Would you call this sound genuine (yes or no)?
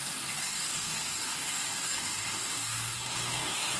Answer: no